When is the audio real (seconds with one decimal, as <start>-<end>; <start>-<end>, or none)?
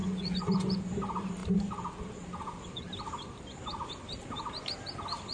0.8-5.3